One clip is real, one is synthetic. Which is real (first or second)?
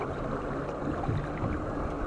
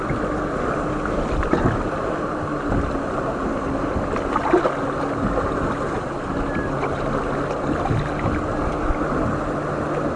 second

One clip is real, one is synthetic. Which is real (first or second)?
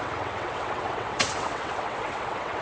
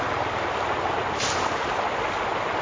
second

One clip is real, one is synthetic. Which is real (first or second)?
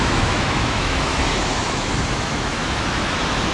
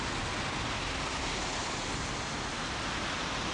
second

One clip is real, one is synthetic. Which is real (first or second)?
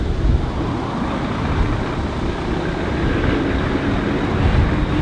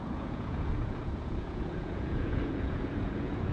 first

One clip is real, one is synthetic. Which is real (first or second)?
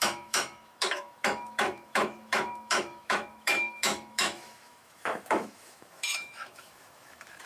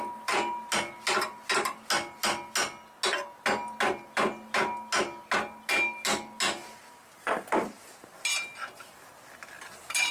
second